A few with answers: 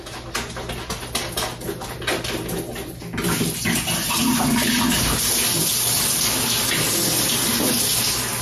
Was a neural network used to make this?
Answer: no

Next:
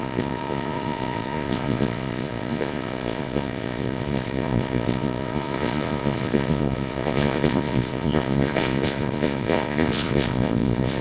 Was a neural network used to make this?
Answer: yes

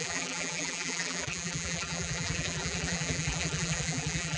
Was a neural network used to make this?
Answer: yes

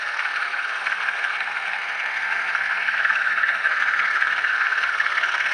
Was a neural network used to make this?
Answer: yes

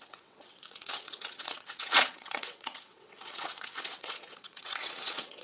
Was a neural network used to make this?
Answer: yes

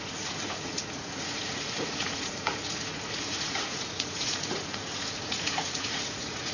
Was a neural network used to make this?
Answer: yes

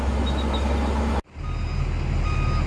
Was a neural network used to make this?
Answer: no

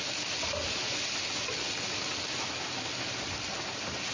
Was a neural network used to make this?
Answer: no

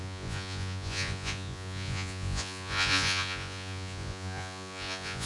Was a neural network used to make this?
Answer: yes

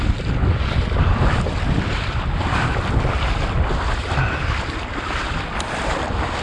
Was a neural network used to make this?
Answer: yes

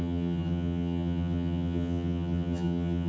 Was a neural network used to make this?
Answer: yes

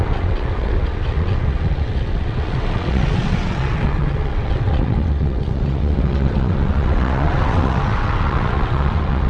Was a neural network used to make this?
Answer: yes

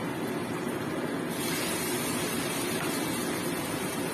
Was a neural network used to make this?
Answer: yes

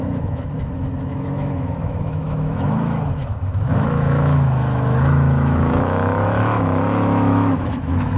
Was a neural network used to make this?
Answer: yes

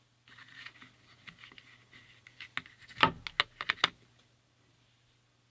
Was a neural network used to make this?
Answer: no